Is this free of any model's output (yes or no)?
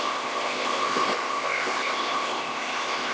no